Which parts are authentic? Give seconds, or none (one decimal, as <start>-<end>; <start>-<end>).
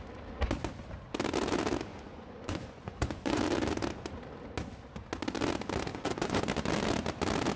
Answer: 0.0-1.9; 3.4-5.9; 6.4-7.6